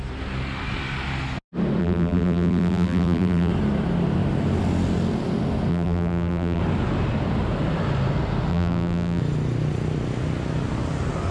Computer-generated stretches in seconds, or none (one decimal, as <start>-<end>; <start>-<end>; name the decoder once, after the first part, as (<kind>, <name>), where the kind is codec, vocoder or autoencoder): 1.8-3.5 (vocoder, BigVGAN v2); 5.7-6.6; 8.5-9.2